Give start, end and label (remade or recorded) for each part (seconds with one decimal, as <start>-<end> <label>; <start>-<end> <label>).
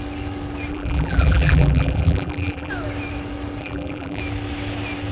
0.0-0.7 recorded; 0.7-2.7 remade; 2.7-3.6 recorded; 3.6-4.2 remade; 4.2-5.1 recorded